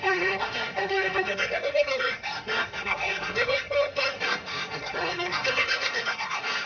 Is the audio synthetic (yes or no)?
yes